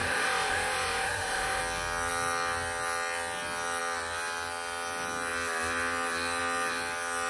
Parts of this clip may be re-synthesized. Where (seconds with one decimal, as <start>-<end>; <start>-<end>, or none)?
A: 0.0-1.6